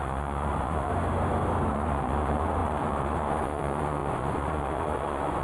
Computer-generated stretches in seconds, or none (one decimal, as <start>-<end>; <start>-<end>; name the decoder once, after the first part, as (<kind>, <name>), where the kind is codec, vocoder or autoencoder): 0.0-0.9 (vocoder, Vocos); 1.7-5.4